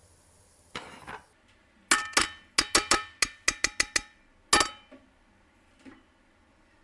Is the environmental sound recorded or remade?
recorded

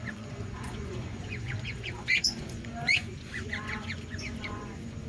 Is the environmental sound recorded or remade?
remade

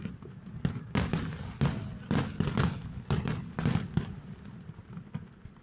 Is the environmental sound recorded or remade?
recorded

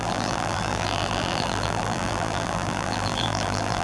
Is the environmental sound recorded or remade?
remade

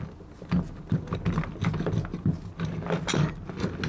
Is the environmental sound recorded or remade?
recorded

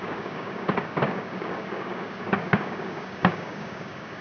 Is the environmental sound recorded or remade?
remade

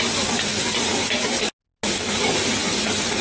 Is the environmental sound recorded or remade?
recorded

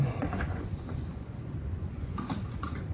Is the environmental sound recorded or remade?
remade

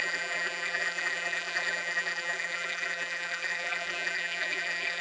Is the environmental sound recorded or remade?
remade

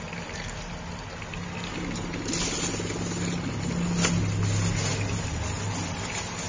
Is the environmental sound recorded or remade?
recorded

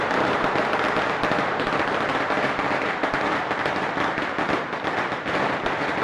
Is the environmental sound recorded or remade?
remade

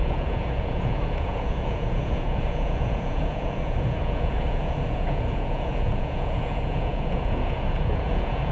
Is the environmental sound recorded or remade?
remade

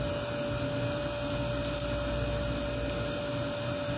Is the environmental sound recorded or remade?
recorded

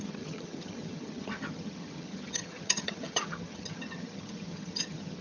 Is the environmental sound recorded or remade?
remade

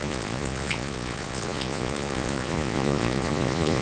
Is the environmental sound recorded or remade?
remade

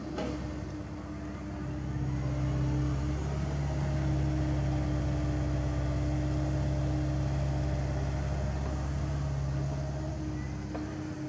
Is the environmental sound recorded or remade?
recorded